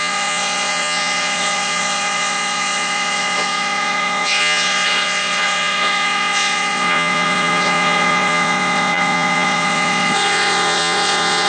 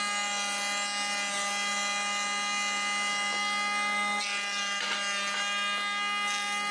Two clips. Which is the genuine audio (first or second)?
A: second